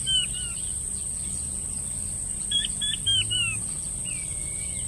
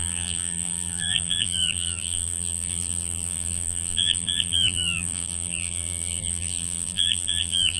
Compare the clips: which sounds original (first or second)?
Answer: first